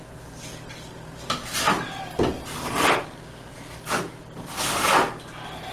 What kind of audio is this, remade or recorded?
recorded